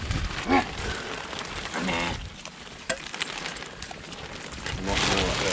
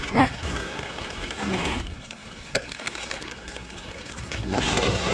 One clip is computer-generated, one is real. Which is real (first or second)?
first